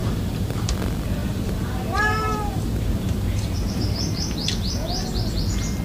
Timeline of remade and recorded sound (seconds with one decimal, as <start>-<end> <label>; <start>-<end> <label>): 0.0-0.7 remade; 0.7-1.2 recorded; 1.2-4.7 remade; 4.7-5.8 recorded